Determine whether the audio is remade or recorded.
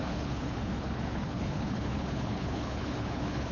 remade